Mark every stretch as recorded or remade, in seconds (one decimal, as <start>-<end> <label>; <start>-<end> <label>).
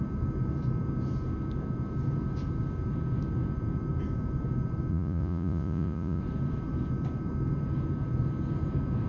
0.0-4.9 recorded; 4.9-6.2 remade; 6.2-9.1 recorded